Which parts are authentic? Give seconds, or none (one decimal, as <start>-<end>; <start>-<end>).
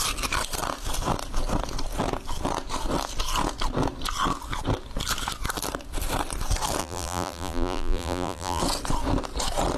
0.0-6.8; 8.6-9.8